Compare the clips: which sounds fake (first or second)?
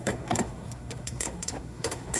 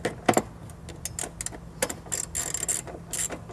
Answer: first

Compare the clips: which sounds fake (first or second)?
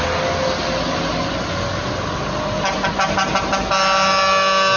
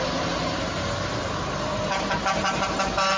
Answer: second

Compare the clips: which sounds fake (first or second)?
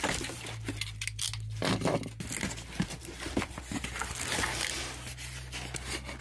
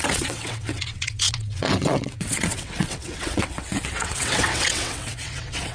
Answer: second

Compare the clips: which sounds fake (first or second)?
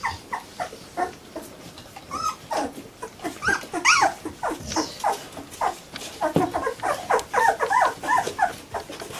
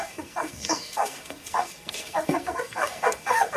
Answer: second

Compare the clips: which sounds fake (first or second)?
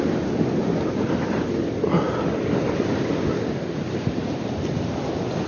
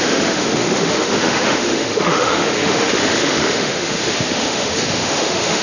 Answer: second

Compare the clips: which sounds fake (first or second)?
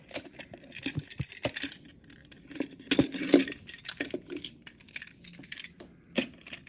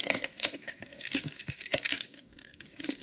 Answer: second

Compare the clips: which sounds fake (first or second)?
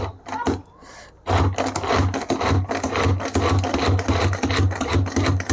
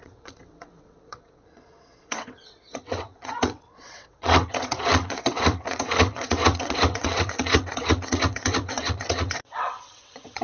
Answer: second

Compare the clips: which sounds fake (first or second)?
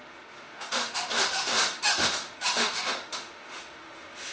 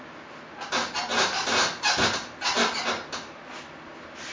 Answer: first